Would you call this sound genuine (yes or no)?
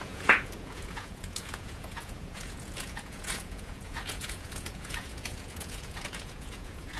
no